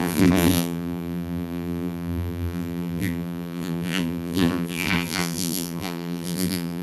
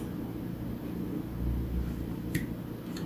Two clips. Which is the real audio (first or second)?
second